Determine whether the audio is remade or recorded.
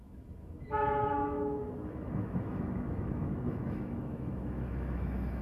remade